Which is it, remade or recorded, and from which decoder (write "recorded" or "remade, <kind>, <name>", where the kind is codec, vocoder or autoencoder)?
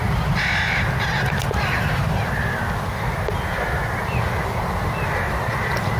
recorded